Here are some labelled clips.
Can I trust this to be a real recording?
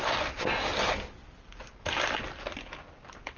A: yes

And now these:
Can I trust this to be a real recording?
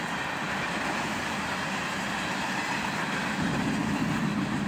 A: yes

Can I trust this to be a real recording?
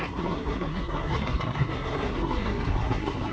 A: no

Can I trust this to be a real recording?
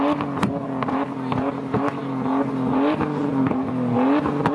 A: yes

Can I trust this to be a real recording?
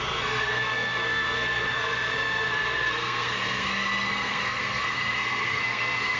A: no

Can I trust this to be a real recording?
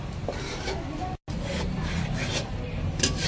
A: yes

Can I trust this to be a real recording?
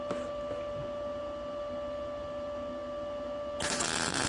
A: yes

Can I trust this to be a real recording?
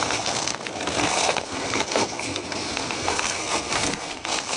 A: no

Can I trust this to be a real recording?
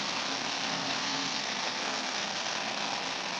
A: no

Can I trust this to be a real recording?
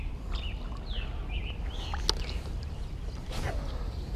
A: yes